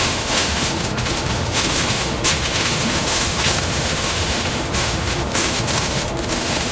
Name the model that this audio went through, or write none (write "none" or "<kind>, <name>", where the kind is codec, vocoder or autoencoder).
autoencoder, DAC-VAE